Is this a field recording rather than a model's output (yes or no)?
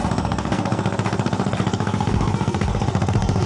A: no